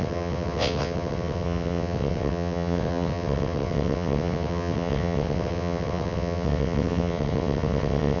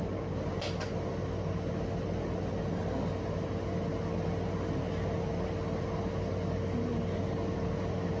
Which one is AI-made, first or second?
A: first